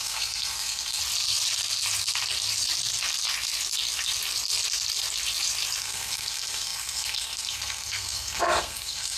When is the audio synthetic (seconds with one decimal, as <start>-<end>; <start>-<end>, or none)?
0.0-1.0; 5.8-9.2